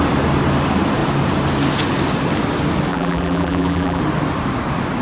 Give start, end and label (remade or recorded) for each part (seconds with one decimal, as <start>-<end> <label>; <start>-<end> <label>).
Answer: 0.0-2.9 recorded; 2.9-4.0 remade; 4.0-5.0 recorded